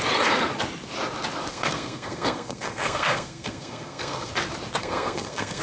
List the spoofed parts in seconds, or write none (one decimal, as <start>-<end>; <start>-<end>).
1.5-4.3; 4.8-5.6